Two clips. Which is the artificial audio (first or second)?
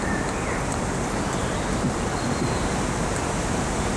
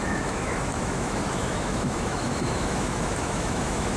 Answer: second